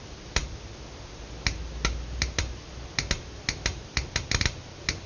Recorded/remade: recorded